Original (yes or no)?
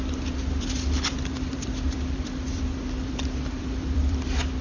no